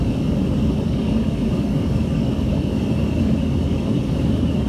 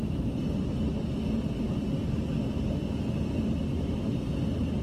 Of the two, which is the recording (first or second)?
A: second